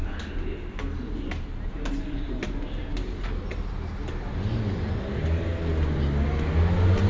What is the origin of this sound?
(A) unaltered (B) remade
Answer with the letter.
A